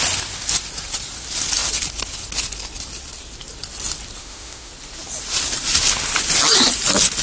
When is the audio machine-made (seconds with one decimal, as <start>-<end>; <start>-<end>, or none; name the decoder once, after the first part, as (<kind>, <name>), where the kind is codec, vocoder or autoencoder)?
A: 4.2-4.7 (autoencoder, DAC-VAE)